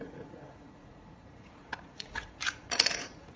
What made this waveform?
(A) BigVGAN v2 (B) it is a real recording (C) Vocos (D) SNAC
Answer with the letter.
C